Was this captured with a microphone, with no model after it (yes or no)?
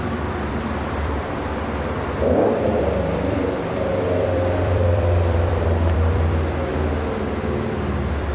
no